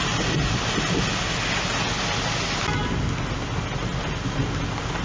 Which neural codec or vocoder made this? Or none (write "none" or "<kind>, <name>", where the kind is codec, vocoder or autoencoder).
none